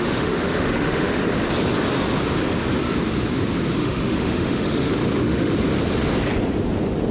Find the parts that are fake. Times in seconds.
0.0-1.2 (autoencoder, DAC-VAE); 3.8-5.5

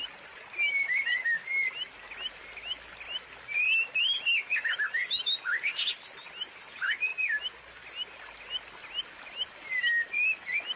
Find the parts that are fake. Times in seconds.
none

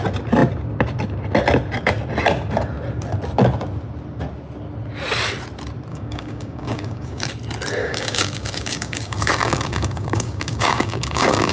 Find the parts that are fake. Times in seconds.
5.9-7.3 (codec, DAC); 7.8-11.5

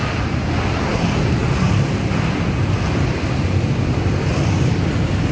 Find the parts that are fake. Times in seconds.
none

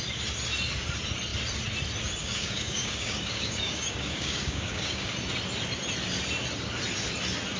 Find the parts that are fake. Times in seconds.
2.2-5.1 (codec, DAC)

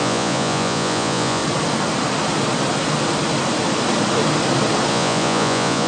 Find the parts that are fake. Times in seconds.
0.0-1.4 (vocoder, Vocos); 4.9-5.9

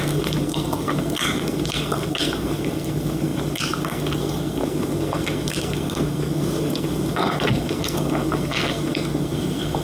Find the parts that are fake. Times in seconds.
0.0-9.8 (codec, SNAC)

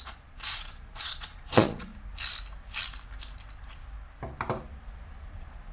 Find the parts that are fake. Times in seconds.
0.0-1.9 (vocoder, Vocos); 5.3-5.7